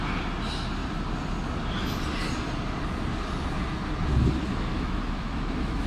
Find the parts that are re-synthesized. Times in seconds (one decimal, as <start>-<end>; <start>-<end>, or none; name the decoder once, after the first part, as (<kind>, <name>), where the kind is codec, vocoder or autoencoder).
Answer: 4.7-5.9 (autoencoder, DAC-VAE)